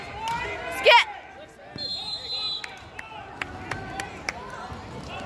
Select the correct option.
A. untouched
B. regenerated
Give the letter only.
A